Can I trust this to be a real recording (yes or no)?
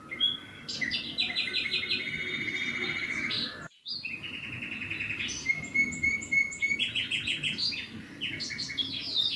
yes